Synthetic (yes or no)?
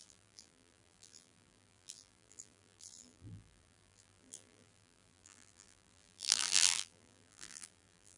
yes